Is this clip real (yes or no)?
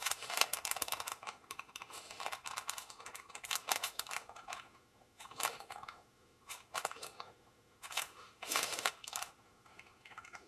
no